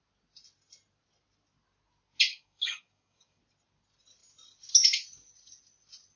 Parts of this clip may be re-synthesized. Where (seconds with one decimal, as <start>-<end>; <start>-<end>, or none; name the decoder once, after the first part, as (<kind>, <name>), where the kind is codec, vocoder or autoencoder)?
2.3-3.4 (codec, DAC)